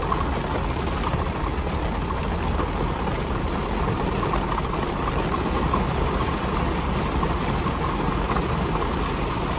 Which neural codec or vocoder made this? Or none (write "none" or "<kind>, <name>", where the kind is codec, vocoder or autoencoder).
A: none